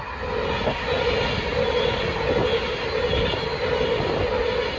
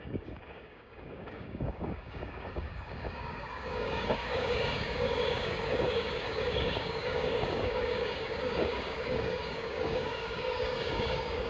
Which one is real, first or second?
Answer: first